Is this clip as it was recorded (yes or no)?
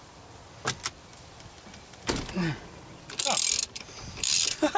yes